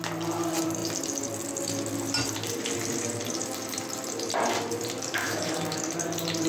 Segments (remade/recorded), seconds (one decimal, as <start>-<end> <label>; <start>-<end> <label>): 0.0-5.2 recorded; 5.2-5.8 remade; 5.8-6.5 recorded